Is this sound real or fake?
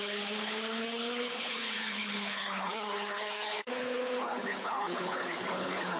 fake